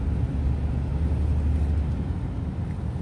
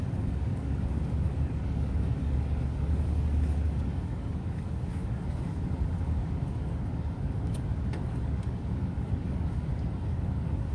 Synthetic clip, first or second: second